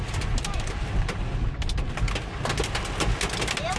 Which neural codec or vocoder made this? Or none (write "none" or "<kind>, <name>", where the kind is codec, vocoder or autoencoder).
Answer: none